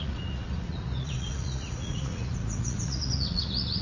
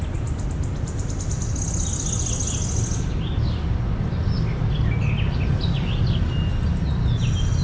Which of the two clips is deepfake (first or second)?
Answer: first